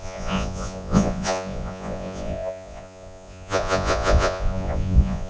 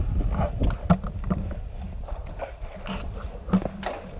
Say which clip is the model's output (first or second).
first